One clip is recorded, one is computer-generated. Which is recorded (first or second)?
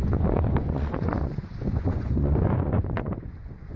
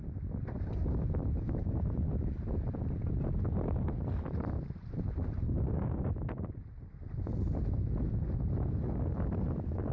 second